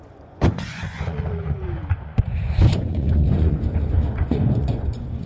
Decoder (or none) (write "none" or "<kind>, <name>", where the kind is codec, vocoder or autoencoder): vocoder, Vocos